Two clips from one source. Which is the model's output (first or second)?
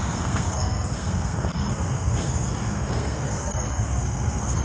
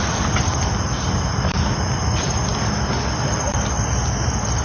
first